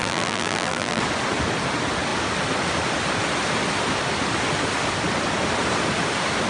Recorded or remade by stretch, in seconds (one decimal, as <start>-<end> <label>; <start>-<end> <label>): 0.0-1.0 remade; 1.0-6.5 recorded